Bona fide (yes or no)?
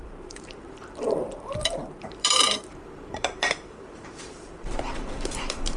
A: no